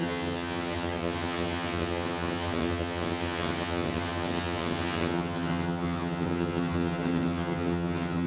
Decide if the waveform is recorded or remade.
remade